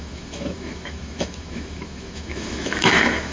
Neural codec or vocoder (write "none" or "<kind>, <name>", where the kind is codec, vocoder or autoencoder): autoencoder, DAC-VAE